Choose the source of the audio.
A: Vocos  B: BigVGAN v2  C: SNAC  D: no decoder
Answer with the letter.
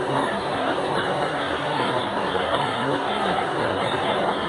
C